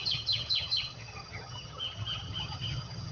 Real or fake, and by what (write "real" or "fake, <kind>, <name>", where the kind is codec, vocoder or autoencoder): fake, vocoder, HiFi-GAN